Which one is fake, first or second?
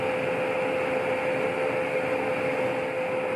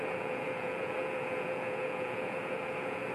second